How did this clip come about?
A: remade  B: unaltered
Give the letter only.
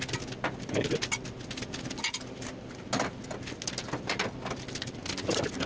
B